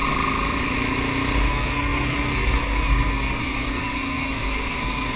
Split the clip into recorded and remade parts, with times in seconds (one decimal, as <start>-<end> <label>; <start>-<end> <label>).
0.0-1.5 recorded; 1.5-5.2 remade